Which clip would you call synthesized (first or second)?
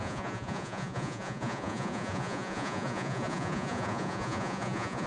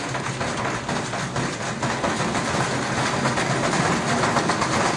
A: first